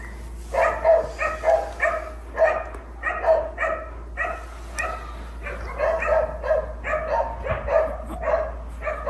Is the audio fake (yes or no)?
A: no